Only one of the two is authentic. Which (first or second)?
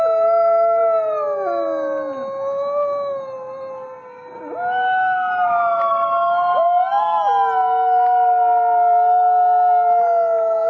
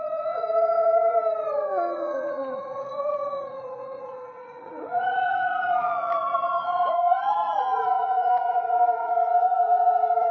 first